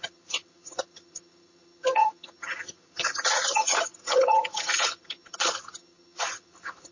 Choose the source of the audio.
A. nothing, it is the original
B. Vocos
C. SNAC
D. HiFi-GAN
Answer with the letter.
D